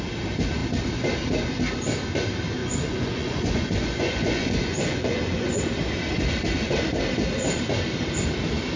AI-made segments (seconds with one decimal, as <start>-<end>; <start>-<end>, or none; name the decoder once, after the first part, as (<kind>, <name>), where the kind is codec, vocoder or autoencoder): 2.6-5.6 (vocoder, Vocos)